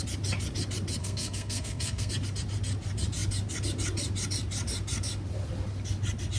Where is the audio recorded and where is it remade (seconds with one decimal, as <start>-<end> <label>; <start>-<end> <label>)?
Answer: 0.0-1.0 recorded; 1.0-2.1 remade; 2.1-6.4 recorded